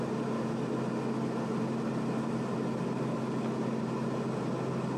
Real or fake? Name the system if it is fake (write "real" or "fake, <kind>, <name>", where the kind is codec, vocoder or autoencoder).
real